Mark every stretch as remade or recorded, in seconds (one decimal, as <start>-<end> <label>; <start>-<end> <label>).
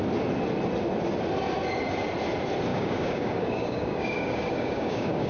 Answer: 0.0-2.7 recorded; 2.7-5.3 remade